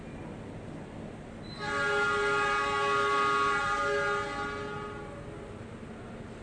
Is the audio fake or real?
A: real